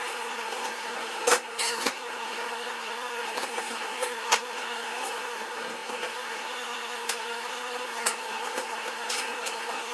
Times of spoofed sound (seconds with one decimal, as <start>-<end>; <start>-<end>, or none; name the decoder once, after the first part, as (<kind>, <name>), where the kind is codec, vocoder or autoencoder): 0.0-9.9 (codec, SNAC)